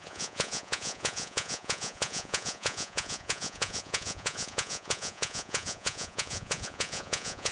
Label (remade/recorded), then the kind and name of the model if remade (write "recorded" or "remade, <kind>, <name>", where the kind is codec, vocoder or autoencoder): remade, vocoder, Vocos